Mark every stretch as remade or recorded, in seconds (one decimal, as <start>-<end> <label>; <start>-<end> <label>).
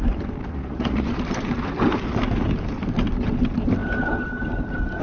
0.0-0.5 recorded; 0.5-1.1 remade; 1.1-5.0 recorded